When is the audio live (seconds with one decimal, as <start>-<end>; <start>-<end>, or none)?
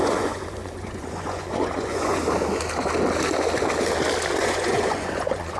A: 2.2-4.4